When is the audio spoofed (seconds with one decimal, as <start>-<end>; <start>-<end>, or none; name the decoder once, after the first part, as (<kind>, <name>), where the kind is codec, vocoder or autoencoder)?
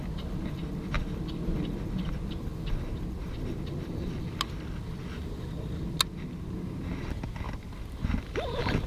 none